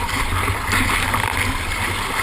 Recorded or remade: recorded